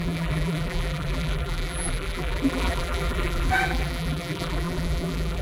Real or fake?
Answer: fake